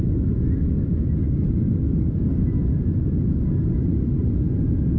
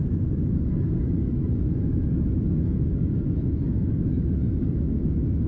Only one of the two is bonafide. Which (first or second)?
first